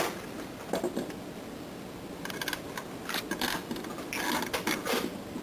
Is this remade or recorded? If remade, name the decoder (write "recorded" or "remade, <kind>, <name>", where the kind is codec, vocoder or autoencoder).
recorded